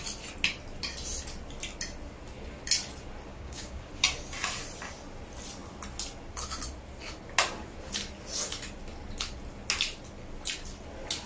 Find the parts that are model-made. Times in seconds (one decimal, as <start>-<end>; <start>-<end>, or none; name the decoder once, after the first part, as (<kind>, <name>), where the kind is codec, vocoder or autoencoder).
3.3-3.9 (codec, DAC)